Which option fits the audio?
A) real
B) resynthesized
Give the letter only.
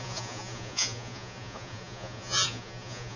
B